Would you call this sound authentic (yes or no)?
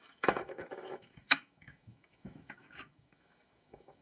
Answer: no